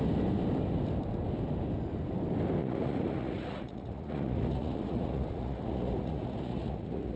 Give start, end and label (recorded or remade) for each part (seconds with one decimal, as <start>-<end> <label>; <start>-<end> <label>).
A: 0.0-2.6 recorded; 2.6-7.2 remade